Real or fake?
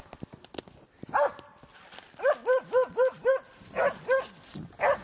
real